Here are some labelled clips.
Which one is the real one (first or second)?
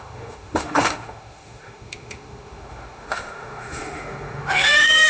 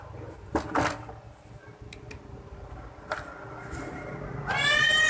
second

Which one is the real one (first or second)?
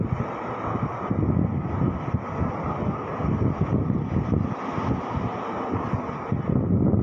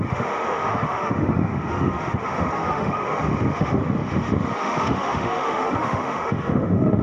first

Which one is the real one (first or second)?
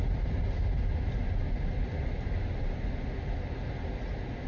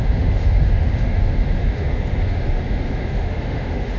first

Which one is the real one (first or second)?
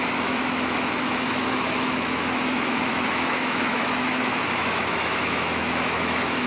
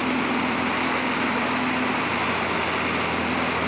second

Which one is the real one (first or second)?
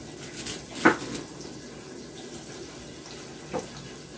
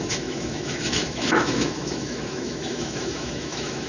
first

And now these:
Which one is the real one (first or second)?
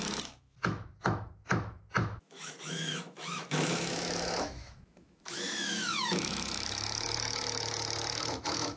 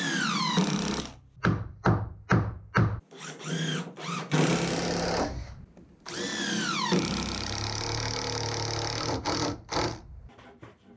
second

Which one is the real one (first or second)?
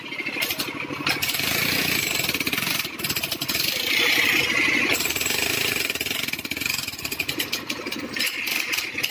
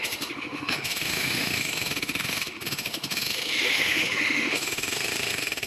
first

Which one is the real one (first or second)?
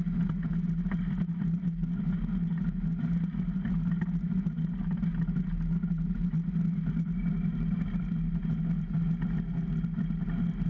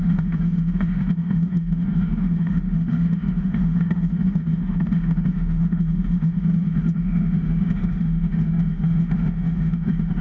first